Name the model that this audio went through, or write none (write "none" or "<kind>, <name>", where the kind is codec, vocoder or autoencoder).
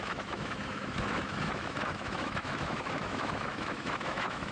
autoencoder, DAC-VAE